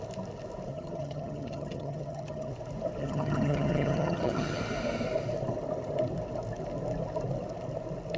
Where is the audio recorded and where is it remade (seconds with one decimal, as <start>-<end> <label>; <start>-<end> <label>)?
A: 0.0-0.7 recorded; 0.7-2.5 remade; 2.5-3.0 recorded; 3.0-4.6 remade; 4.6-8.2 recorded